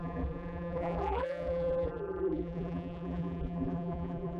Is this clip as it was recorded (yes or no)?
no